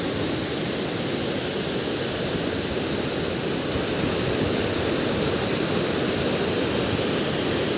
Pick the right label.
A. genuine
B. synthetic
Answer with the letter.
A